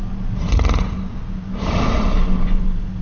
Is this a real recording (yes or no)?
yes